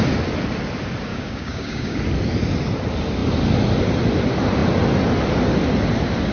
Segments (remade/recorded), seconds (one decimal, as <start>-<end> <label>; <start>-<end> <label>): 0.0-1.1 recorded; 1.1-2.0 remade; 2.0-6.3 recorded